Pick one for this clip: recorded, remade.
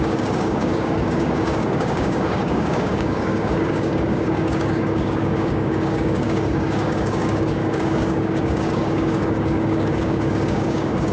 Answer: remade